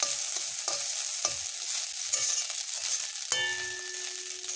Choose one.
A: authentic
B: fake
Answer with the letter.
A